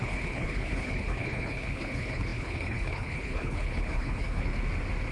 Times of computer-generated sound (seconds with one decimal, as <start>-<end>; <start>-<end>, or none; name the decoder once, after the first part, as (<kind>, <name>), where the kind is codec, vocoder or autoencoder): 0.0-4.5 (codec, HILCodec)